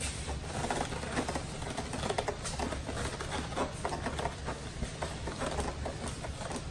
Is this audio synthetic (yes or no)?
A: no